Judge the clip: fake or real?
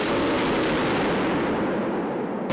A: real